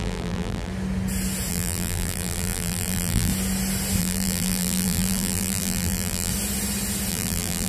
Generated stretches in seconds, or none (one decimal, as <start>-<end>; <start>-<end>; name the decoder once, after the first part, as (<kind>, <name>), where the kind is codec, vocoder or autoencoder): 0.0-0.7 (vocoder, BigVGAN v2); 1.5-3.3; 4.0-6.3; 7.1-7.7